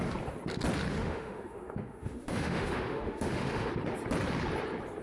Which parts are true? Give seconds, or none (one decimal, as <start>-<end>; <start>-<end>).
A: 0.0-0.9; 3.7-5.0